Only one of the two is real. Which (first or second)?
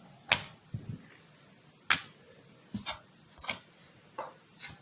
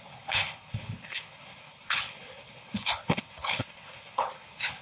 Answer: first